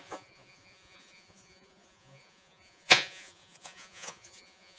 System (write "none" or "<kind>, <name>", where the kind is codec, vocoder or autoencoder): vocoder, Vocos